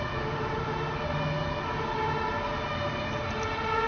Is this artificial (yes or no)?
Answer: no